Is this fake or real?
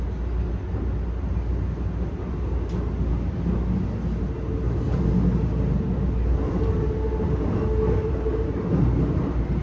real